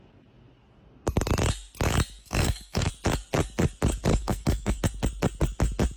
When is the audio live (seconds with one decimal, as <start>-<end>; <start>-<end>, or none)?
0.0-2.2; 2.9-4.1; 4.8-6.0